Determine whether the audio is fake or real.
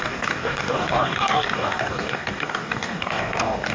fake